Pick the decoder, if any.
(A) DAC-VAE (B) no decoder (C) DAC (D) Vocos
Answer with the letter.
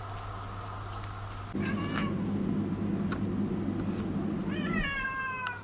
B